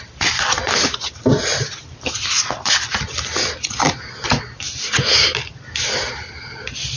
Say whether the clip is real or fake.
real